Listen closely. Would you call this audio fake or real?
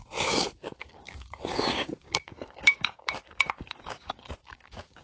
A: fake